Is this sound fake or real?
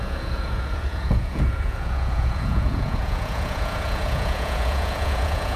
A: fake